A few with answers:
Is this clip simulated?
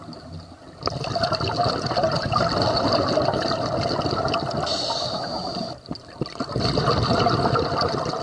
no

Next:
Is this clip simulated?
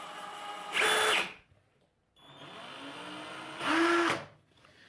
no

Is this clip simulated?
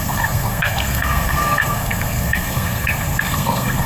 yes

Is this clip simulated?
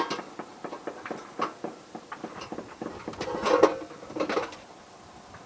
no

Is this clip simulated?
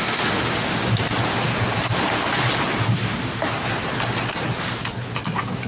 no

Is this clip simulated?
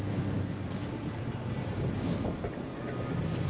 no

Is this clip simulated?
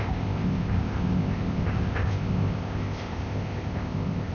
yes